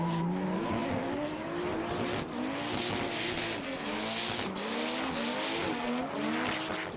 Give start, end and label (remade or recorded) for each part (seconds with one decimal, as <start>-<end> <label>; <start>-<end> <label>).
0.0-7.0 recorded